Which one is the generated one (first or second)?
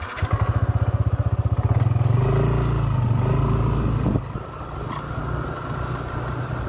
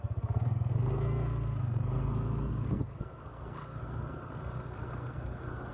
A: second